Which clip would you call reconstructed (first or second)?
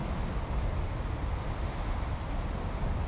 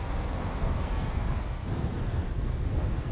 second